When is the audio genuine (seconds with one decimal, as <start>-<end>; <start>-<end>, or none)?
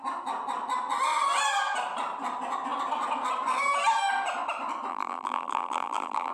0.0-4.9